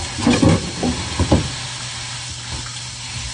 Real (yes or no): yes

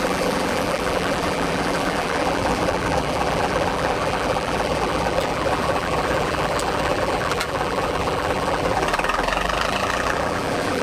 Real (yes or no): no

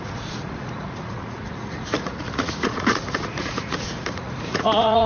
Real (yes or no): no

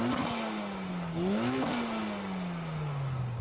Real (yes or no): yes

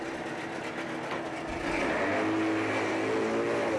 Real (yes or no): yes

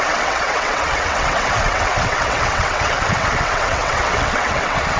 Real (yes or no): no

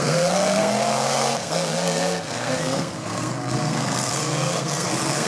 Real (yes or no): no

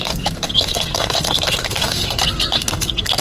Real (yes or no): no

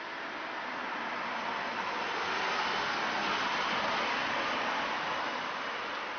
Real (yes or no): yes